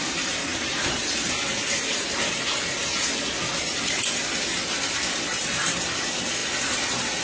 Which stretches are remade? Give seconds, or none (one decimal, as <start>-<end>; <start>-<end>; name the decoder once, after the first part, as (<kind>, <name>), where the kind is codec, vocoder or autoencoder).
none